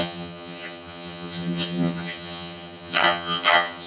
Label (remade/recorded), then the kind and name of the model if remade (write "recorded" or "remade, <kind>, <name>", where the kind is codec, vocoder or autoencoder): remade, vocoder, HiFi-GAN